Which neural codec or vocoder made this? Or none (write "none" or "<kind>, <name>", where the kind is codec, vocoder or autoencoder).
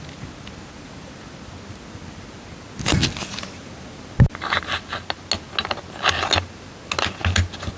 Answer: none